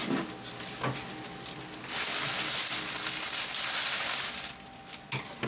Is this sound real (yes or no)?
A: yes